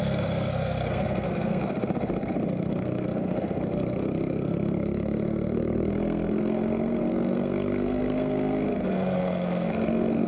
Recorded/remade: remade